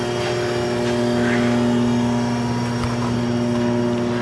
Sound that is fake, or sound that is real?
real